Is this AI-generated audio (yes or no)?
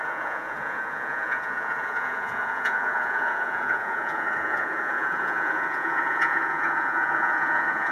yes